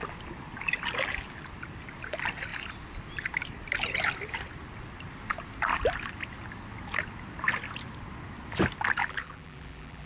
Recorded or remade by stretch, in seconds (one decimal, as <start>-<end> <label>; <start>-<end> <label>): 0.0-9.0 recorded; 9.0-10.1 remade